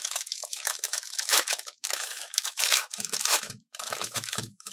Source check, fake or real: fake